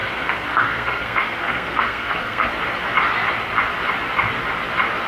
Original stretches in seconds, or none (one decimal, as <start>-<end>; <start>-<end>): 2.5-5.1